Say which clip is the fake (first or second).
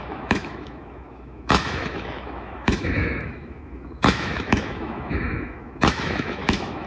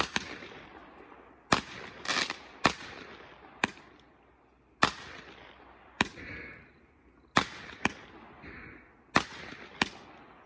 first